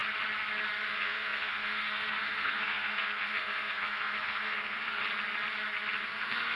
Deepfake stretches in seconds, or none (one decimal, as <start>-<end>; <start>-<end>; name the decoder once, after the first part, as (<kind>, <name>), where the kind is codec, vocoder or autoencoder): 0.9-5.0 (codec, SNAC); 6.0-6.6